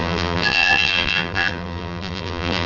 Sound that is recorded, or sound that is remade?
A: remade